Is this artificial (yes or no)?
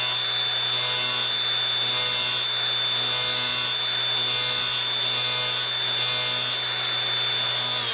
no